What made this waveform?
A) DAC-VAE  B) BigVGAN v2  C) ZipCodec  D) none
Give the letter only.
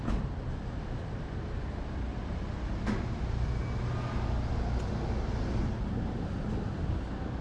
D